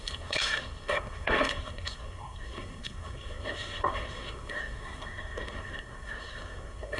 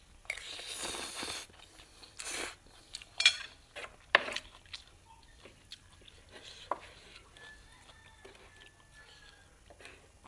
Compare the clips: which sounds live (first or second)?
second